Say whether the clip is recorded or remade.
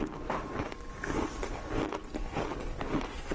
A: recorded